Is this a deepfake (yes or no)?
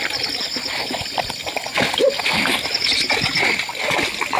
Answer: no